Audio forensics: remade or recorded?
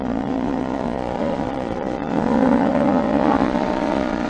remade